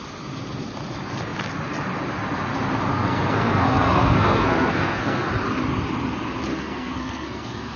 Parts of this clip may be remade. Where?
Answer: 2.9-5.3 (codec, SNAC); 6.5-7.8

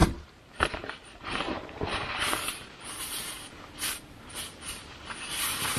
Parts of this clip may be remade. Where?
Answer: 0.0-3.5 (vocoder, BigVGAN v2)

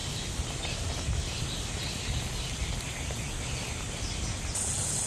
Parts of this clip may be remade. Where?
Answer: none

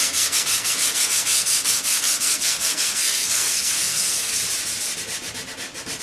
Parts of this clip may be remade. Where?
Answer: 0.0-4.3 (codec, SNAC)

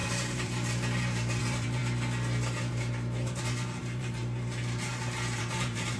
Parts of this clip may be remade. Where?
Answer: 0.0-1.8 (vocoder, BigVGAN v2); 2.7-6.0

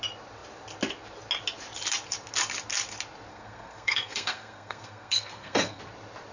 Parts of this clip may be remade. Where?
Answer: 3.3-5.8 (codec, SNAC)

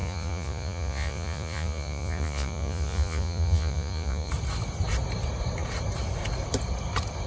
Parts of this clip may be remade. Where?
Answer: 0.0-4.3 (vocoder, Vocos)

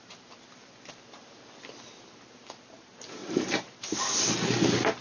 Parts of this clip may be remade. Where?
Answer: 3.2-4.0 (vocoder, BigVGAN v2)